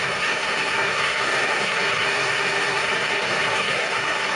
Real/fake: fake